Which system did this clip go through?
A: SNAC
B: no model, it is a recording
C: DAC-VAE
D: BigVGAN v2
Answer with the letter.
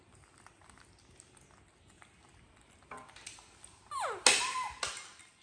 B